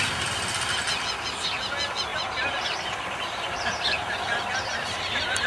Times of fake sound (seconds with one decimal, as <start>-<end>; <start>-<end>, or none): 2.1-5.5